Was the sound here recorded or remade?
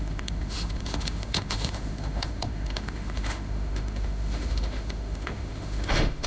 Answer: remade